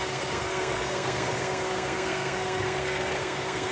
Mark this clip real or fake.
fake